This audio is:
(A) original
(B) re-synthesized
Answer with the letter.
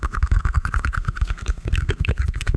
B